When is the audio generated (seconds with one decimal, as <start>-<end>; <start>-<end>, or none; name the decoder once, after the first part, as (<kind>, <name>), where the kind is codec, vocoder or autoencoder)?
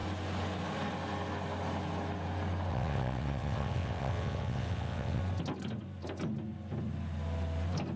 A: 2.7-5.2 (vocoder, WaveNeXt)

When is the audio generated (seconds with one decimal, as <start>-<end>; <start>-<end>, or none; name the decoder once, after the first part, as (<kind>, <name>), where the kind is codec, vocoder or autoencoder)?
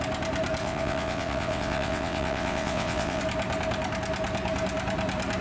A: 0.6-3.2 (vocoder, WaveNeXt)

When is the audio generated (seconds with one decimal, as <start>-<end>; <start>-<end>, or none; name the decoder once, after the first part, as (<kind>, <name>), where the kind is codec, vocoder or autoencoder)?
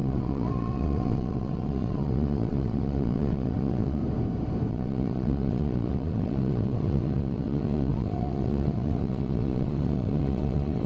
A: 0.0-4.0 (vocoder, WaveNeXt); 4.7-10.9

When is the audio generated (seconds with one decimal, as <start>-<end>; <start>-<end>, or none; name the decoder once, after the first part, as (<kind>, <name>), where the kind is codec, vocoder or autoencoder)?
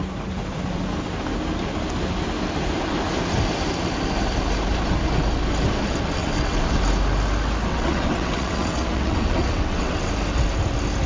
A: 6.2-6.8 (vocoder, WaveNeXt); 7.7-10.1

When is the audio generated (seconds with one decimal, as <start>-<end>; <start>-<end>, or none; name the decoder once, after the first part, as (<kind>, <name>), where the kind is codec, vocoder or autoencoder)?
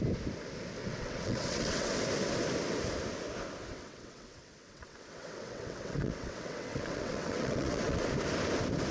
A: 0.8-1.9 (vocoder, WaveNeXt); 3.7-8.1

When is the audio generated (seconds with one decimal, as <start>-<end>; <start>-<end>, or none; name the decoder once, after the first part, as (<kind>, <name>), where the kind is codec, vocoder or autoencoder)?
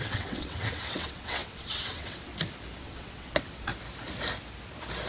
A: 0.0-2.3 (vocoder, WaveNeXt); 2.8-3.7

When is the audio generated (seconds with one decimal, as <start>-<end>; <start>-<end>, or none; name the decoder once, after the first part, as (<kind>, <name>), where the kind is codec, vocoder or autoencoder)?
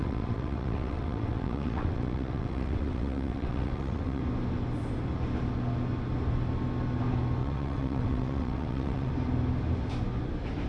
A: 0.0-4.2 (vocoder, WaveNeXt); 7.4-9.1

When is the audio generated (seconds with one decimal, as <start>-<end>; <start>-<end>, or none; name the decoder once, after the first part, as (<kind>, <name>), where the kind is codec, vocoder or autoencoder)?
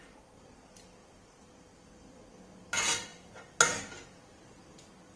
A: none